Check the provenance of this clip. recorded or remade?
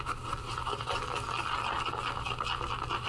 recorded